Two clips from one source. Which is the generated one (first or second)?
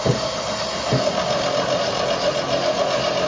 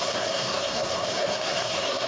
second